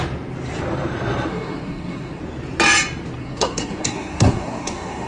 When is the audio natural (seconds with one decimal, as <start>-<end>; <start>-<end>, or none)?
0.0-1.3; 2.2-3.2